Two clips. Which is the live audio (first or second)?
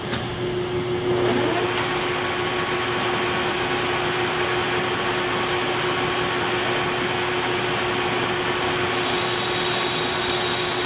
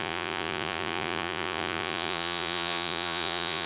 first